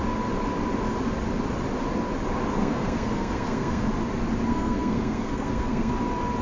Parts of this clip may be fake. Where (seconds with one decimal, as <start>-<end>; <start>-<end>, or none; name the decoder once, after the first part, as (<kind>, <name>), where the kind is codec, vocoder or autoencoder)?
2.6-3.9 (codec, SNAC); 4.5-5.9